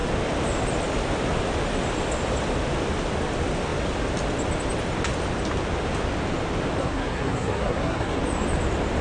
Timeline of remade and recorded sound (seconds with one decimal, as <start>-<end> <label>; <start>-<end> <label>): 0.0-6.8 recorded; 6.8-8.2 remade; 8.2-9.0 recorded